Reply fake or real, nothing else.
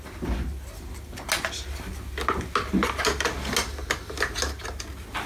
real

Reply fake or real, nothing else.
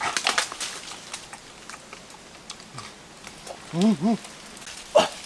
real